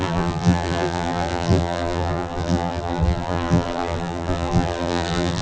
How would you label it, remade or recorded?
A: remade